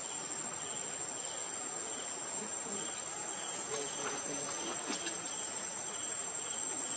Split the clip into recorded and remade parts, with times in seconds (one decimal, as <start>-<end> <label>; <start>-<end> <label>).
0.0-1.4 recorded; 1.4-2.8 remade; 2.8-3.2 recorded; 3.2-6.6 remade; 6.6-7.0 recorded